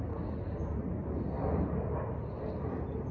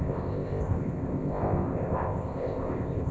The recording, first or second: first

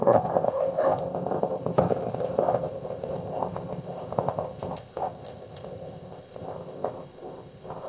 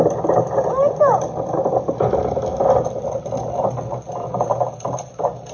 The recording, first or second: second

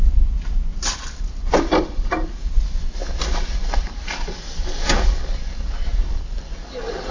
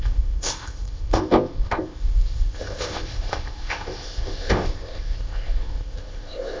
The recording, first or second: first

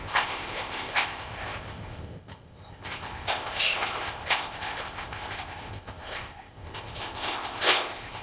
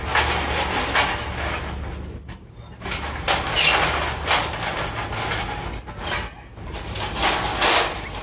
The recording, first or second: second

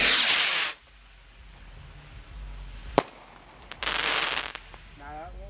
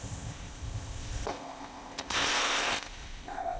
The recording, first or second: first